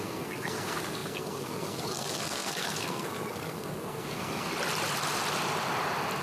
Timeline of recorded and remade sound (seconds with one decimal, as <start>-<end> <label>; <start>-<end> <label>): 0.0-4.5 remade; 4.5-6.2 recorded